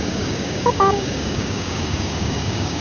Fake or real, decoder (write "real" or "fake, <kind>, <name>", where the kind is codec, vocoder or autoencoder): fake, codec, DAC